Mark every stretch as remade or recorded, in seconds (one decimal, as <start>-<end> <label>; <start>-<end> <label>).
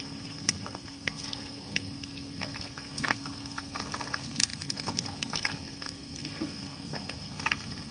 0.0-7.9 remade